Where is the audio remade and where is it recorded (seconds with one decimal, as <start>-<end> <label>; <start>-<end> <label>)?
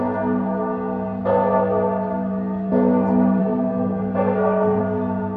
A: 0.0-3.4 recorded; 3.4-4.8 remade; 4.8-5.4 recorded